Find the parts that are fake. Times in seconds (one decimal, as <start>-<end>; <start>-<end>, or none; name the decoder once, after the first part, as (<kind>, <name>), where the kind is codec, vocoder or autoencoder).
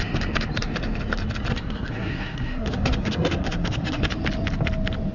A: 1.5-4.0 (codec, SNAC)